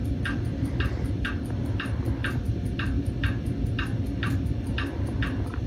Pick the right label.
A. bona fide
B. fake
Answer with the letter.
A